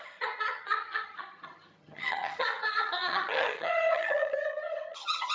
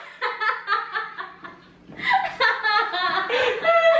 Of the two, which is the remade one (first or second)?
first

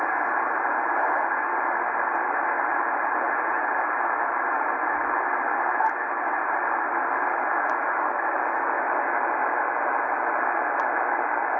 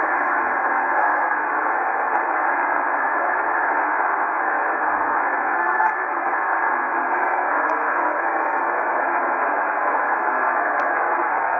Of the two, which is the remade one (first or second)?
second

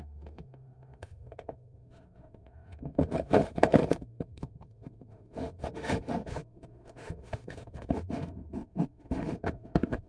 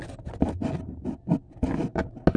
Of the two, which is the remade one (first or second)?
first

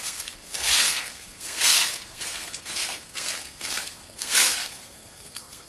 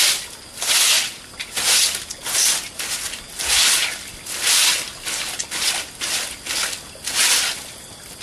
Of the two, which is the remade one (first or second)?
first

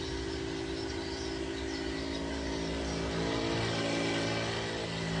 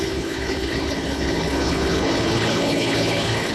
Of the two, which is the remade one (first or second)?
second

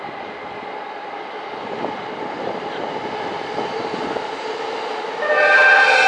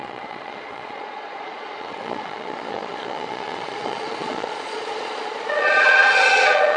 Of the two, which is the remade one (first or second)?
second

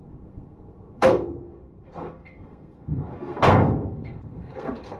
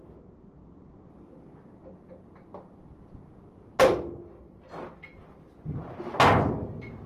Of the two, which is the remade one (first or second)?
first